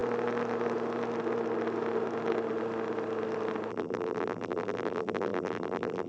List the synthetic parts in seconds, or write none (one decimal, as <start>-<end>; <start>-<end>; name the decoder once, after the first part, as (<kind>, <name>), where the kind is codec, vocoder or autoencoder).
3.7-6.1 (vocoder, BigVGAN v2)